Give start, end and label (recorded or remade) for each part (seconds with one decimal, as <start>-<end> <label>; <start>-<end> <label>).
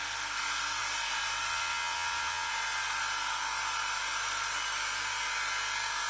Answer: 0.0-1.5 recorded; 1.5-2.5 remade; 2.5-6.1 recorded